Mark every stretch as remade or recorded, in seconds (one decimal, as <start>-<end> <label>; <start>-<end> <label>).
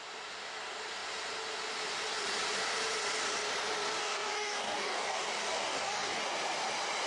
0.0-4.0 recorded; 4.0-6.2 remade; 6.2-7.1 recorded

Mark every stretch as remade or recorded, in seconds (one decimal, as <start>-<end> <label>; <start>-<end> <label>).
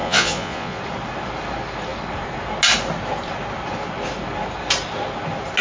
0.0-0.8 remade; 0.8-5.6 recorded